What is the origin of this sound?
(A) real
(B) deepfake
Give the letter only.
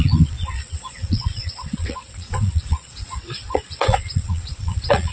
B